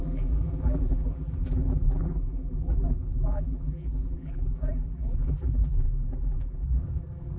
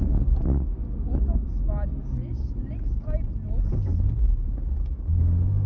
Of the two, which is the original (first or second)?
second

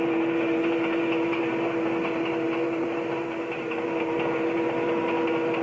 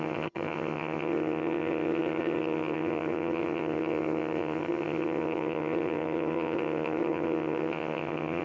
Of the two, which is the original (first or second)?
first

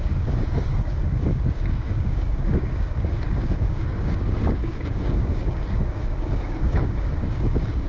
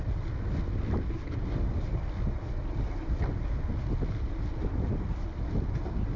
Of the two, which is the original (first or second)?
second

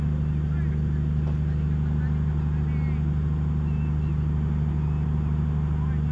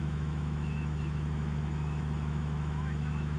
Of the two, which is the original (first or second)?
first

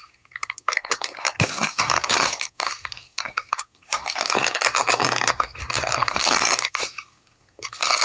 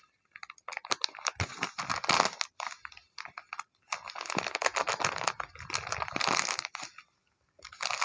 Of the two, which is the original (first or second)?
second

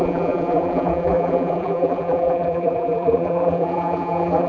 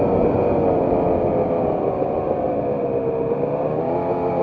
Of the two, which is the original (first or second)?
second